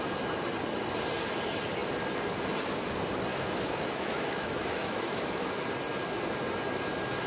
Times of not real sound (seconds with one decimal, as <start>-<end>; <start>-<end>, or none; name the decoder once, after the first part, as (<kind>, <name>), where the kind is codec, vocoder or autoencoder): 3.3-5.5 (autoencoder, DAC-VAE)